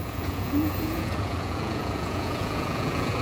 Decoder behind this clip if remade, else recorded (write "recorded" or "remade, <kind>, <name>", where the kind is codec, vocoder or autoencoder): remade, vocoder, Vocos